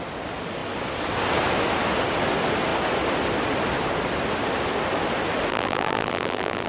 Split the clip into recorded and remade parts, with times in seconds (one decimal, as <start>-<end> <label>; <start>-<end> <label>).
0.0-5.5 recorded; 5.5-6.7 remade